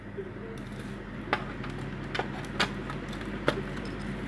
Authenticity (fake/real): real